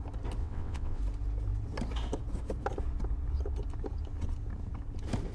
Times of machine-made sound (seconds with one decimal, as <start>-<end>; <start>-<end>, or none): 0.4-1.0